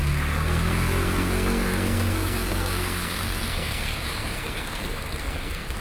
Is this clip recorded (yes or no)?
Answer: no